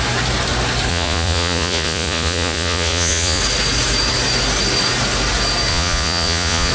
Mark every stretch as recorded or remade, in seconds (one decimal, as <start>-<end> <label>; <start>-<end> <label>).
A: 0.0-0.9 recorded; 0.9-3.4 remade; 3.4-5.7 recorded; 5.7-6.7 remade